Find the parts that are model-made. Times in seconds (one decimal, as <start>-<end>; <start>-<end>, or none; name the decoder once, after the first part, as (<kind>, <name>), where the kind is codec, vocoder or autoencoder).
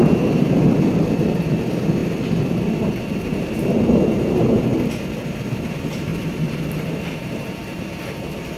0.0-4.7 (vocoder, BigVGAN v2); 5.3-8.6